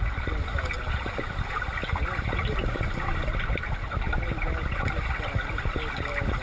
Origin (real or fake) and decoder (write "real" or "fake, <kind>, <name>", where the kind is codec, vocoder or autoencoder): real